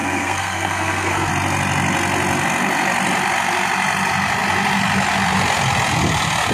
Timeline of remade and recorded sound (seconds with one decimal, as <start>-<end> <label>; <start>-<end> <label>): 0.0-1.3 remade; 1.3-6.5 recorded